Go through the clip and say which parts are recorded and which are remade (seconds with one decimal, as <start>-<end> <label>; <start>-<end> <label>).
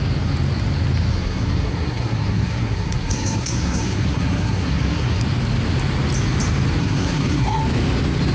0.0-1.1 recorded; 1.1-5.2 remade; 5.2-6.8 recorded; 6.8-7.6 remade; 7.6-8.3 recorded